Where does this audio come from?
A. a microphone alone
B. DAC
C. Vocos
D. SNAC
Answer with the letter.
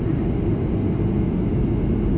A